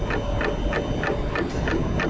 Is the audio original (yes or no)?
yes